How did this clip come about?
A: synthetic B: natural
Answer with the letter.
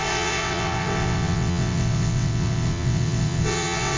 A